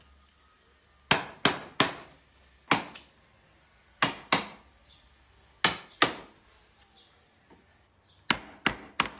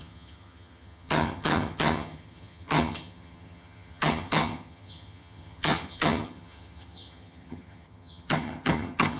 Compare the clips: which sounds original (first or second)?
first